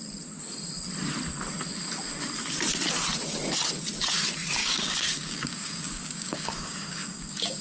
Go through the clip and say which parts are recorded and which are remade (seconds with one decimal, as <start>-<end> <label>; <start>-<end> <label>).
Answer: 0.0-4.6 recorded; 4.6-7.6 remade